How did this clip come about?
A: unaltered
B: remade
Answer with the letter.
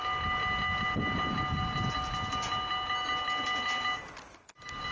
A